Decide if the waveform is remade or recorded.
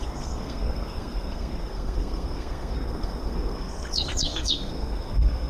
remade